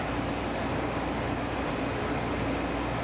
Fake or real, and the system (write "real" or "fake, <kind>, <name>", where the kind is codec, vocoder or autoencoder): real